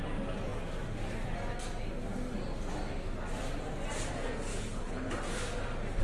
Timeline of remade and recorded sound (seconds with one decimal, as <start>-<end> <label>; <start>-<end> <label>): 0.0-4.5 recorded; 4.5-5.1 remade; 5.1-6.0 recorded